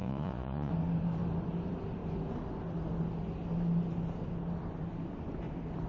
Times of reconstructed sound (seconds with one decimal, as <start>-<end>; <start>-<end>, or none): 0.0-0.7